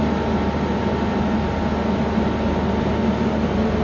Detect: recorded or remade recorded